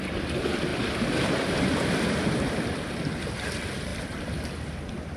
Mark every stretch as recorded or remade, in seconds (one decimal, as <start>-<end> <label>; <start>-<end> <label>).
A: 0.0-5.2 recorded